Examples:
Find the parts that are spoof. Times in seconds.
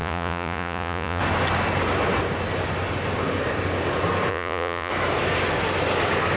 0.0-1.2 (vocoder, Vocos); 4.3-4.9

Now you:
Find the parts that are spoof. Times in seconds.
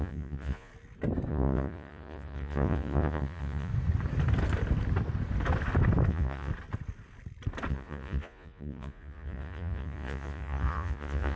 0.0-0.7 (vocoder, Vocos); 1.3-3.7; 6.1-6.5; 7.7-11.4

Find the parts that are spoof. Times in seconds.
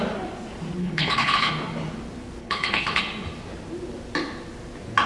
0.8-1.5 (codec, HILCodec); 2.4-3.0